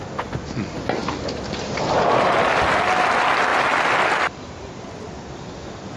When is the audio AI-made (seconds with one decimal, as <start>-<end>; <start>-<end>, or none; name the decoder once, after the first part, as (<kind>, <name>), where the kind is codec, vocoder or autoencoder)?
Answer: none